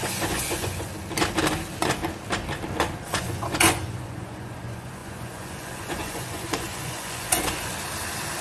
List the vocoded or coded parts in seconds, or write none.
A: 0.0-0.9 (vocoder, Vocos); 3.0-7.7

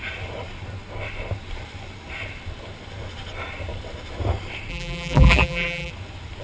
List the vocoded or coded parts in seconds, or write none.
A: 4.7-5.9 (vocoder, BigVGAN v2)